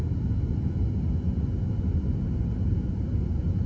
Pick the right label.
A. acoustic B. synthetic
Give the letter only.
A